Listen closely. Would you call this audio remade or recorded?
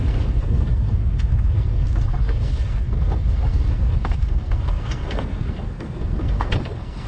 remade